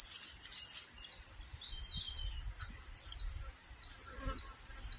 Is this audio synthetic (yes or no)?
no